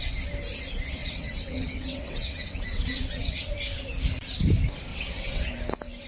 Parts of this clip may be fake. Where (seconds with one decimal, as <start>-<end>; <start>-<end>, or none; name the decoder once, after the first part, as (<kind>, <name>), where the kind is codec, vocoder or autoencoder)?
1.0-3.5 (vocoder, WaveNeXt); 4.9-5.5